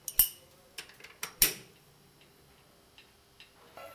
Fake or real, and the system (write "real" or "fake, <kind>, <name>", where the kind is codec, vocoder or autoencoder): real